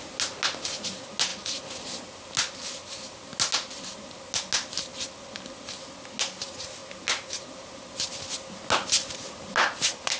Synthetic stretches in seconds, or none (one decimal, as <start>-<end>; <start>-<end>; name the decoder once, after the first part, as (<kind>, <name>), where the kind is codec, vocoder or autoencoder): none